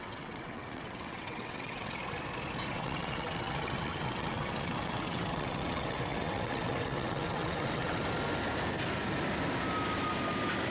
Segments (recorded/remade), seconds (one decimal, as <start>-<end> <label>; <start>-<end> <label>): 0.0-2.0 remade; 2.0-2.7 recorded; 2.7-8.0 remade; 8.0-10.7 recorded

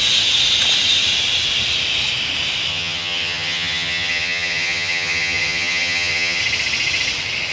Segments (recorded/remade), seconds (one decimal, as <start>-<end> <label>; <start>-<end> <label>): 0.0-2.7 recorded; 2.7-6.4 remade; 6.4-7.5 recorded

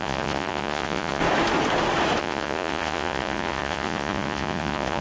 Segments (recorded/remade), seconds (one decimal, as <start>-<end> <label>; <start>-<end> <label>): 0.0-1.2 remade; 1.2-2.2 recorded; 2.2-5.0 remade